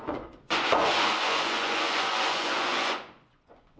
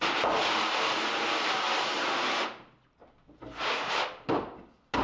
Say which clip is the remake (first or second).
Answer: first